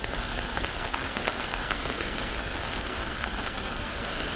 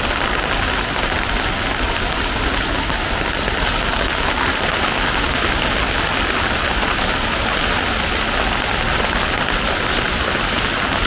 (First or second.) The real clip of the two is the second